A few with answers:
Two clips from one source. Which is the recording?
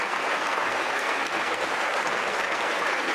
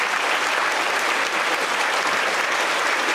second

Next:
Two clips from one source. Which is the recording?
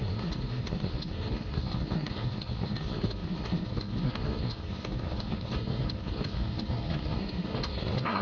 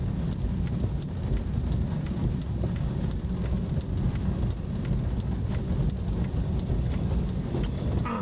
second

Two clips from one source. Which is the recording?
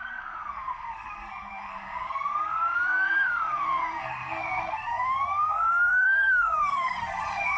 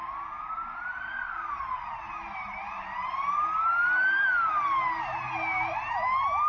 second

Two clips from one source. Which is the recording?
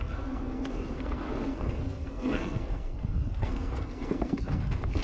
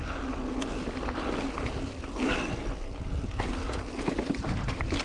second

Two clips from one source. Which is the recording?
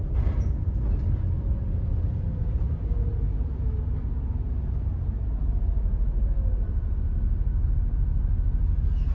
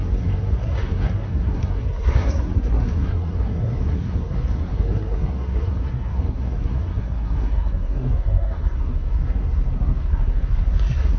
first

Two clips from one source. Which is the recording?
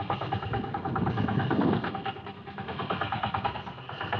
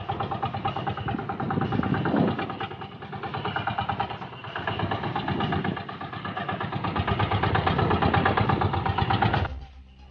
second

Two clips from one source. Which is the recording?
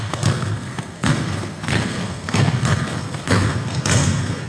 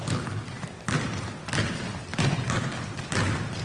second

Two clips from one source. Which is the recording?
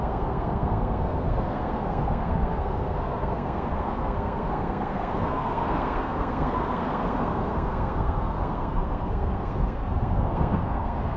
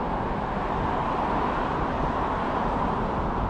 second